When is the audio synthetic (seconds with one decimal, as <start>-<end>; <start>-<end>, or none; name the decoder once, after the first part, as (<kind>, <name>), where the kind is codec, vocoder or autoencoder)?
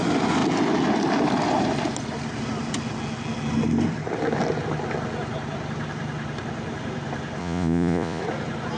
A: 7.4-8.2 (vocoder, Vocos)